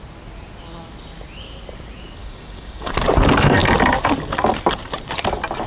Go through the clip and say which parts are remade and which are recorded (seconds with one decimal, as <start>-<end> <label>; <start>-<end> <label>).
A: 0.0-2.2 recorded; 2.2-2.9 remade; 2.9-5.7 recorded